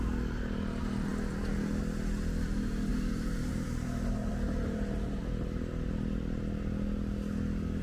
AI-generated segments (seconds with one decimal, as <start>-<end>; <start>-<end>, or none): 2.9-5.2